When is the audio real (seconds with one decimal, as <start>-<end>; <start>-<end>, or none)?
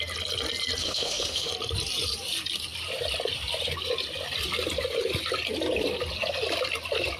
0.0-0.8; 1.5-7.2